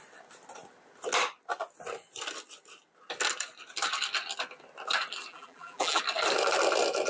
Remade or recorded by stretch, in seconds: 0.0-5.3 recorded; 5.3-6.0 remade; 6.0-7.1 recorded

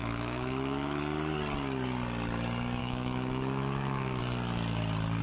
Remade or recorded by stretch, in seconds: 0.0-1.0 remade; 1.0-2.8 recorded; 2.8-4.2 remade; 4.2-5.2 recorded

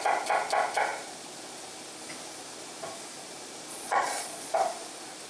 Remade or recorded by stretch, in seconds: 0.0-3.7 recorded; 3.7-4.5 remade; 4.5-5.3 recorded

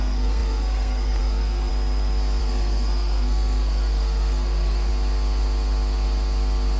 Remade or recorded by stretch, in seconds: 0.0-1.7 remade; 1.7-2.4 recorded; 2.4-4.9 remade; 4.9-6.8 recorded

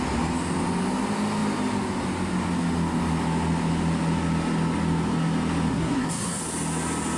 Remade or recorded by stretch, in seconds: 0.0-5.7 recorded; 5.7-6.4 remade; 6.4-7.2 recorded

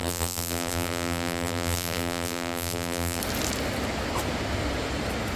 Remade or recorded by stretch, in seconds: 0.0-3.2 remade; 3.2-5.4 recorded